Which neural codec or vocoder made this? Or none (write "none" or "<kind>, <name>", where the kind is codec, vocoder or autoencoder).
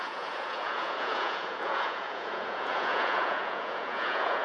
vocoder, Vocos